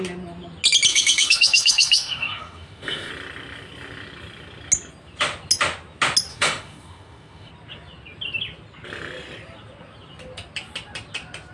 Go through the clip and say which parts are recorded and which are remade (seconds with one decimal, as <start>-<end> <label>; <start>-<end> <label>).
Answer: 0.0-0.9 recorded; 0.9-3.1 remade; 3.1-6.3 recorded; 6.3-7.5 remade; 7.5-11.5 recorded